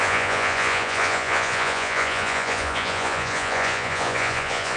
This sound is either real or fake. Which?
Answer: fake